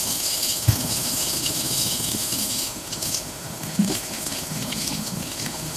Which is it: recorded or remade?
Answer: remade